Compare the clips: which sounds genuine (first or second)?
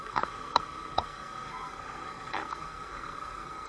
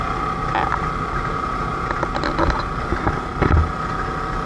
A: second